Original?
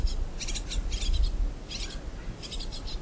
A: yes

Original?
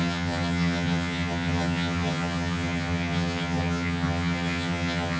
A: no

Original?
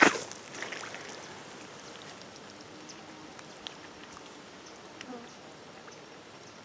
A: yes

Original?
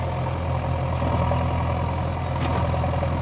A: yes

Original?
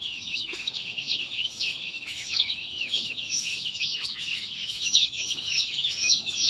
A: no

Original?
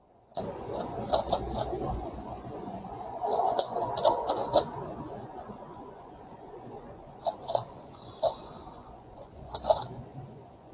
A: no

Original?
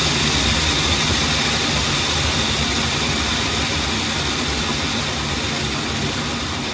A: yes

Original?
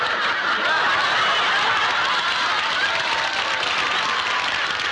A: yes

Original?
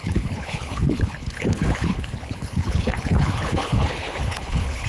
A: no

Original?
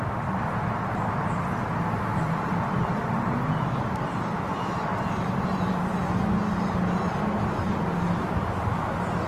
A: yes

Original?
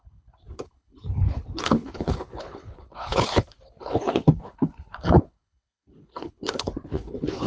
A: no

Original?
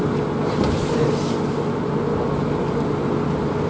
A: yes